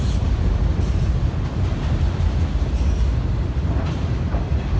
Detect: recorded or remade recorded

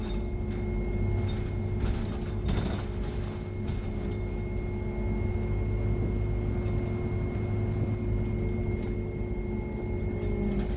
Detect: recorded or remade recorded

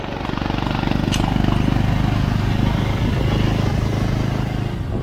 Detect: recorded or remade recorded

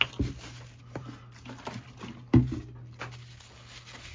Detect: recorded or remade recorded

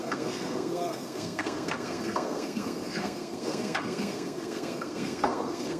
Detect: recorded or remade remade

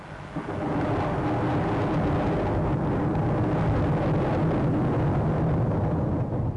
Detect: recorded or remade recorded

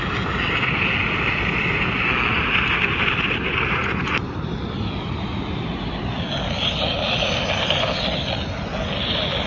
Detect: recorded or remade recorded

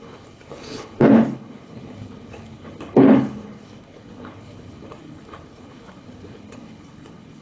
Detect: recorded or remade remade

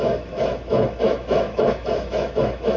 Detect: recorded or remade remade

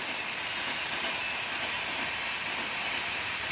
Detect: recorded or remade recorded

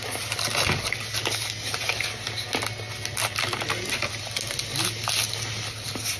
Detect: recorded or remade recorded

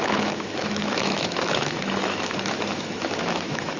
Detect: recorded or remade remade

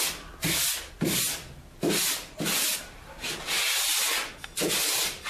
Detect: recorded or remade recorded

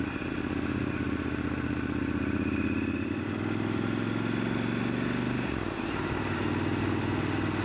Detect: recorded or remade recorded